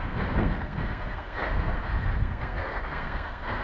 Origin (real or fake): fake